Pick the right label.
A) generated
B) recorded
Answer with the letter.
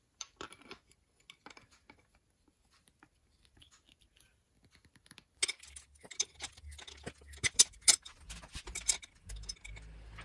B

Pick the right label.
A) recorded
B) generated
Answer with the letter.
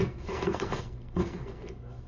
B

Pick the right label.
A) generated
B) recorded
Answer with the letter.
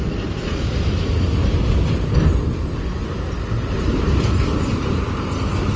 B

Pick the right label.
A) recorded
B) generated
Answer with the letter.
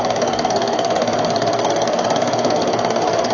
B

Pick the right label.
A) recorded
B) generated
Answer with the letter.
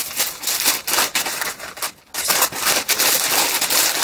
A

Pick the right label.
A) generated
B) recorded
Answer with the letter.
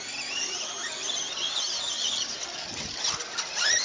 B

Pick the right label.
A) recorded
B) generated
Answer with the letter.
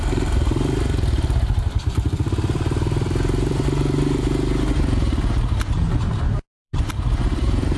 B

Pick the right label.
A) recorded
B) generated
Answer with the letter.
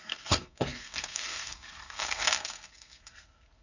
B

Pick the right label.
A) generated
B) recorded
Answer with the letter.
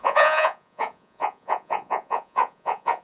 A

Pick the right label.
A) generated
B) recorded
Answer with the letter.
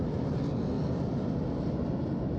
B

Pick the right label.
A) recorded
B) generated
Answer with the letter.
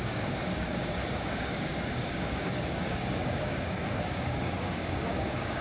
B